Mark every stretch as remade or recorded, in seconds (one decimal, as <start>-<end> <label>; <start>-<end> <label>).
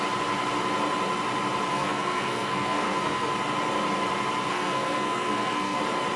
0.0-1.7 recorded; 1.7-3.3 remade; 3.3-4.5 recorded; 4.5-5.8 remade; 5.8-6.2 recorded